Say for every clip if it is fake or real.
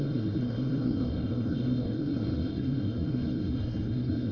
fake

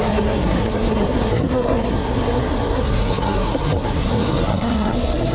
fake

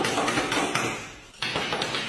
real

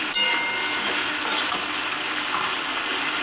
real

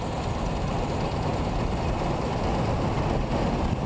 real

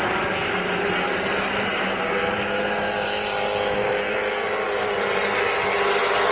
real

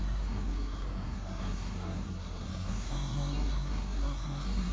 fake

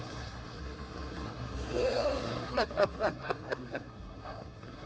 fake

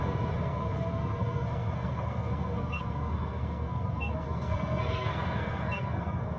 fake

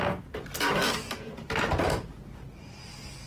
real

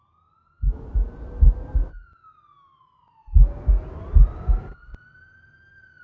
real